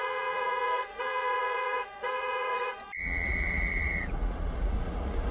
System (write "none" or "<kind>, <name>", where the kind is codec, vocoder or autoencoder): vocoder, Vocos